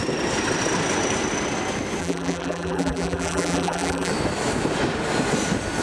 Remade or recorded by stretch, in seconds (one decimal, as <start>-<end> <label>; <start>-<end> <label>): 0.0-2.0 recorded; 2.0-4.1 remade; 4.1-5.8 recorded